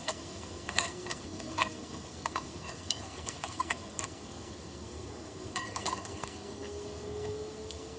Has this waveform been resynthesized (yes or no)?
yes